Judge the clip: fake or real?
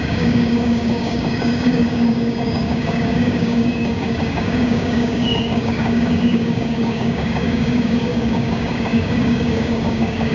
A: fake